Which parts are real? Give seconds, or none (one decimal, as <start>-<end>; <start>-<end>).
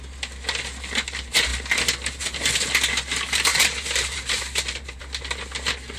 0.0-3.5; 5.0-6.0